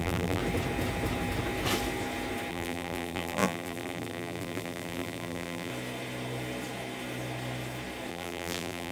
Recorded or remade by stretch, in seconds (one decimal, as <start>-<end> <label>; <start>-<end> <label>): 0.0-0.4 remade; 0.4-2.5 recorded; 2.5-5.7 remade; 5.7-8.1 recorded; 8.1-8.9 remade